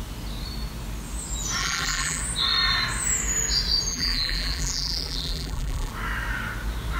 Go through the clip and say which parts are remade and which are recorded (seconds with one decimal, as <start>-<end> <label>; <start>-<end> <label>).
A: 0.0-1.6 recorded; 1.6-2.2 remade; 2.2-3.9 recorded; 3.9-5.9 remade; 5.9-7.0 recorded